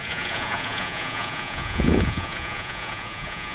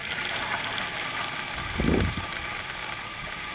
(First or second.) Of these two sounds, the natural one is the second